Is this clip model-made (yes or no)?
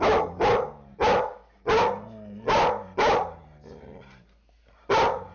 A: no